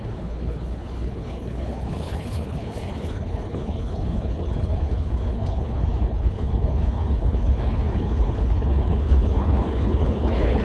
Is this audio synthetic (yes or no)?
yes